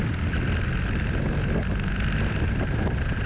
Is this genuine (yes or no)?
yes